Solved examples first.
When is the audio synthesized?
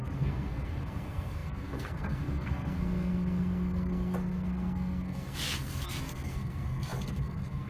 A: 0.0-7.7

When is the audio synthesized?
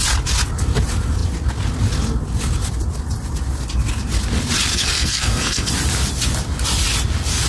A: 4.7-5.7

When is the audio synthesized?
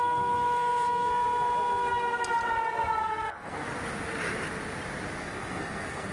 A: 0.0-1.1; 3.0-3.7; 5.2-6.1